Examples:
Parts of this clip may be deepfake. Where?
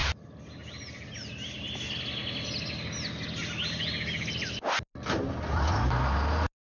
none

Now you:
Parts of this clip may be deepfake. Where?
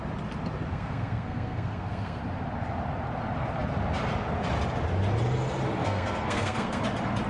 0.7-2.2 (codec, SNAC); 5.8-6.8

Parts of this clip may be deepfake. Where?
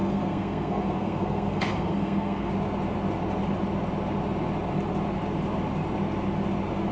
0.0-2.5 (codec, SNAC)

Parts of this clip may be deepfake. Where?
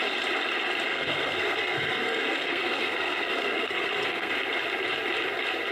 0.9-4.3 (codec, SNAC)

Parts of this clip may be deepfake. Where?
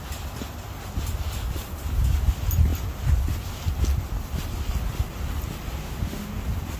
5.8-6.3 (autoencoder, DAC-VAE)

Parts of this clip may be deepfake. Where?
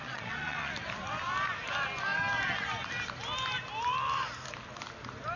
0.0-0.7 (vocoder, Vocos)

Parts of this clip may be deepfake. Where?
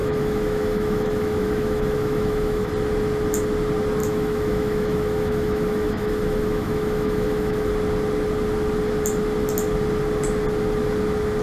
0.0-2.7 (autoencoder, DAC-VAE); 4.0-7.7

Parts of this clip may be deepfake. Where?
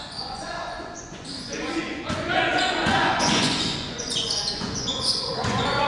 0.0-5.9 (vocoder, Vocos)